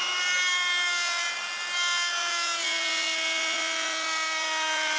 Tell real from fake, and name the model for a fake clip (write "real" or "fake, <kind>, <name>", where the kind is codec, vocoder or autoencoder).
real